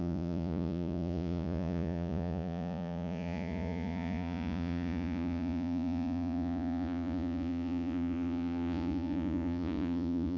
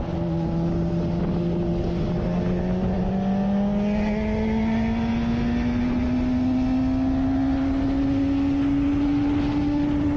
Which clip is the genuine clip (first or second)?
second